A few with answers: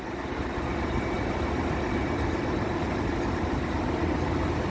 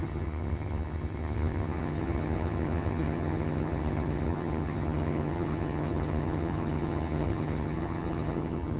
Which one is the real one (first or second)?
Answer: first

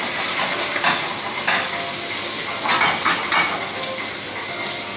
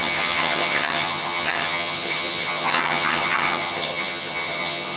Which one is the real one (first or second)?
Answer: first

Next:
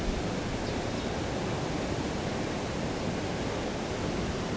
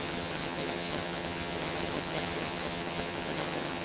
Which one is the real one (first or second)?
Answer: first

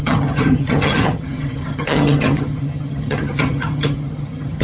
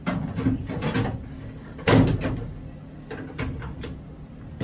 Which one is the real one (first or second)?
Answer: second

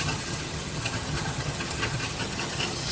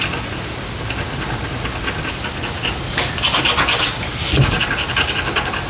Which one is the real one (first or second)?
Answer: second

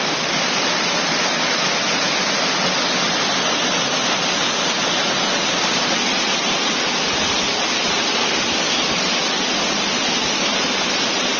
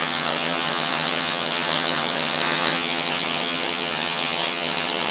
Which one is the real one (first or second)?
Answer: first